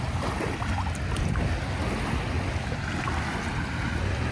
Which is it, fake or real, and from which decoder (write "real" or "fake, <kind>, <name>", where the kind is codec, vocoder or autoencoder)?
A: real